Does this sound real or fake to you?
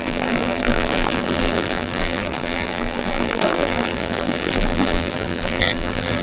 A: fake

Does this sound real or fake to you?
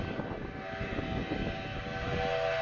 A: real